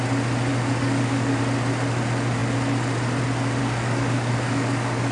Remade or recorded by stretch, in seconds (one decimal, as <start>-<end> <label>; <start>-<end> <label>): 0.0-0.5 recorded; 0.5-1.4 remade; 1.4-3.6 recorded; 3.6-5.1 remade